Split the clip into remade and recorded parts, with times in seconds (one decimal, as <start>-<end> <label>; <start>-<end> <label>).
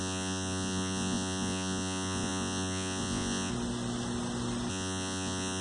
0.0-3.5 remade; 3.5-4.7 recorded; 4.7-5.6 remade